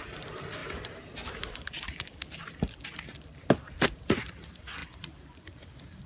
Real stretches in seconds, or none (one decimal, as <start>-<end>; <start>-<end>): 0.0-6.1